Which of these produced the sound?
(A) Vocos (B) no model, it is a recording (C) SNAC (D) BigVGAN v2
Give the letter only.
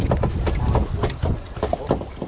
B